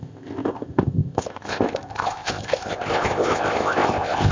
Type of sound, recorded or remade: remade